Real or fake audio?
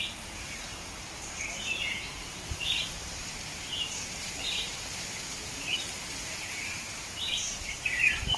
fake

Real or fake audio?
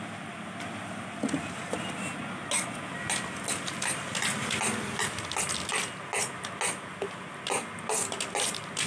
real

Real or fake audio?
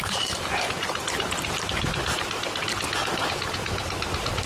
real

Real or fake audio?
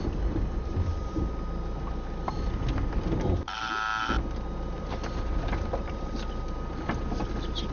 fake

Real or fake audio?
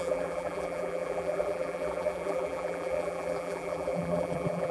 fake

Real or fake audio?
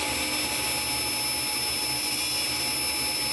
real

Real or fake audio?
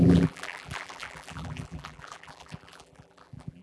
fake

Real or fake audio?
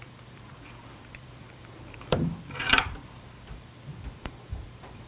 fake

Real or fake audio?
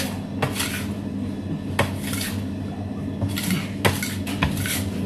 real